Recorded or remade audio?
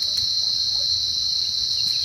recorded